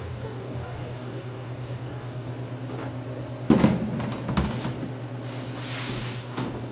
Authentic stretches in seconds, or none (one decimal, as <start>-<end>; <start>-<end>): 2.3-5.8

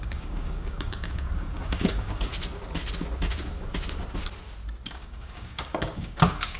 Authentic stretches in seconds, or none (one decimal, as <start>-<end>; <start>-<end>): 2.3-4.9

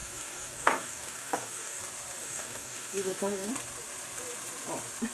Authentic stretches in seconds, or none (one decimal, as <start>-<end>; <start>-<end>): 1.8-2.2; 3.5-5.1

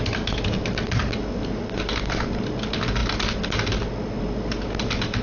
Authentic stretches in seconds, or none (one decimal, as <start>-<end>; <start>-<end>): 0.0-5.2

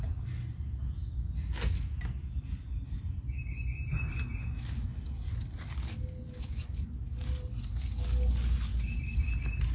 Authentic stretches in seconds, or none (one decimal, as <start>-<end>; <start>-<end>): 0.0-9.7

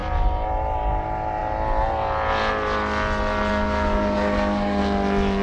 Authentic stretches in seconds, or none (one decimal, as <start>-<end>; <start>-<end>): 0.0-3.5; 4.8-5.4

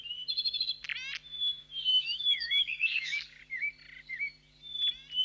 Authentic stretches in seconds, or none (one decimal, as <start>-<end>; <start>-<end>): 0.0-1.9; 3.4-5.2

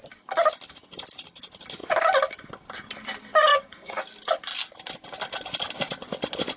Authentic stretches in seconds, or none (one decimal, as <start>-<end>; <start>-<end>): 0.0-3.5; 4.0-6.6